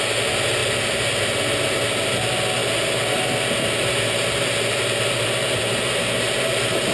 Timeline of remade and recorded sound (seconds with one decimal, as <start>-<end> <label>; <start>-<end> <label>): 0.0-6.9 recorded